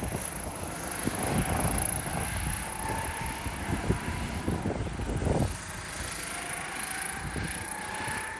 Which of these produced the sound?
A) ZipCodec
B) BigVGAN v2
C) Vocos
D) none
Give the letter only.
D